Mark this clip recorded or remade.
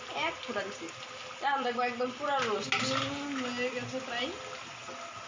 recorded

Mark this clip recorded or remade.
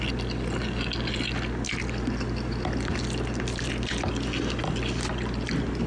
recorded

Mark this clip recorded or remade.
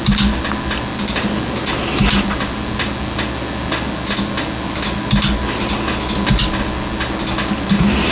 recorded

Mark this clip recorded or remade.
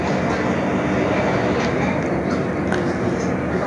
recorded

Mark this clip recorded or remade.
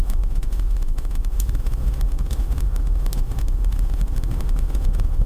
remade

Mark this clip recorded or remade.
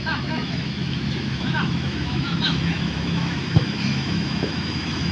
remade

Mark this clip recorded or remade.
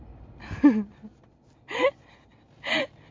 recorded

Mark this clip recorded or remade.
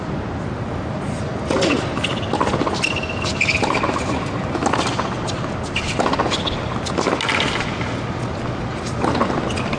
recorded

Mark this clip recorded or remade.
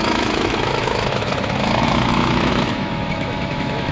remade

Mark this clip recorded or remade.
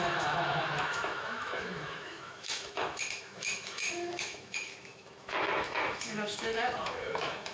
remade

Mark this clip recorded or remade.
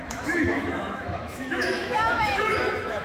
remade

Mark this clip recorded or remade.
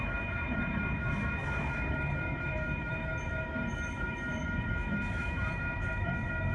remade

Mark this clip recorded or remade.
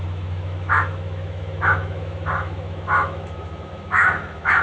remade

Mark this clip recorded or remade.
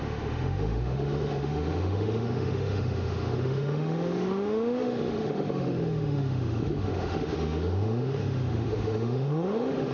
remade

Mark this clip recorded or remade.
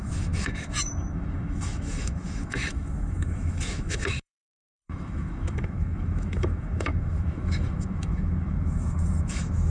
remade